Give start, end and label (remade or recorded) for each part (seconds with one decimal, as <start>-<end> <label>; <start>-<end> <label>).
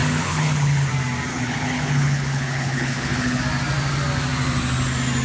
0.0-0.9 remade; 0.9-1.3 recorded; 1.3-3.4 remade; 3.4-5.2 recorded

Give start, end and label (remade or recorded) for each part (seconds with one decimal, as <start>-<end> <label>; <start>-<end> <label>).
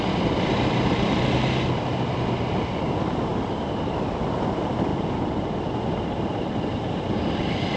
0.0-7.8 recorded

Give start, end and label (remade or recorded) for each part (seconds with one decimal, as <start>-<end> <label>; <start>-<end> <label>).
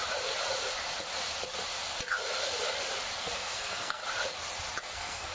0.0-3.2 recorded; 3.2-4.0 remade; 4.0-4.8 recorded; 4.8-5.3 remade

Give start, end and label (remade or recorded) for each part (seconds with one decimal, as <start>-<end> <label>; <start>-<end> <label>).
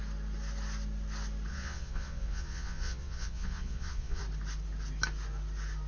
0.0-1.5 recorded; 1.5-4.2 remade; 4.2-5.9 recorded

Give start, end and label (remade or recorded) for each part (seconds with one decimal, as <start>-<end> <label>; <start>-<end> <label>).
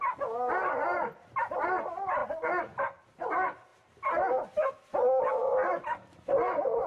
0.0-6.9 recorded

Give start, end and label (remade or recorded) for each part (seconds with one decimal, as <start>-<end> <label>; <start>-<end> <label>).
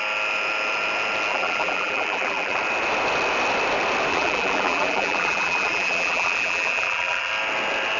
0.0-1.3 recorded; 1.3-2.6 remade; 2.6-4.1 recorded; 4.1-7.3 remade; 7.3-8.0 recorded